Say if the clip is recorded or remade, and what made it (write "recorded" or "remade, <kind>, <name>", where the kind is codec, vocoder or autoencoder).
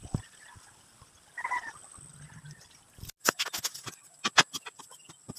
recorded